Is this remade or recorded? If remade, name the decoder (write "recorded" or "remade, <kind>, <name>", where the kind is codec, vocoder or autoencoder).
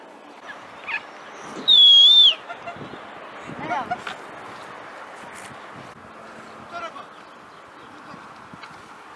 recorded